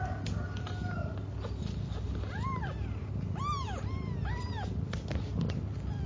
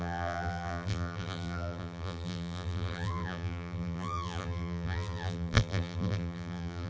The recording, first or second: first